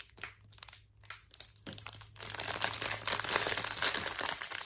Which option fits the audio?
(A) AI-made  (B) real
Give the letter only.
B